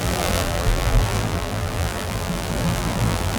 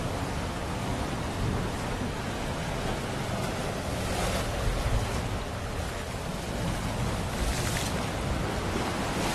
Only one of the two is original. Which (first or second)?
second